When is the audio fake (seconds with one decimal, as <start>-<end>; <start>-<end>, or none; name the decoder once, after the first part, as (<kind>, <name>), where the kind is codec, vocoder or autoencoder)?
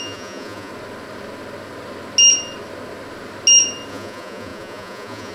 0.0-0.7 (vocoder, Vocos); 3.9-5.3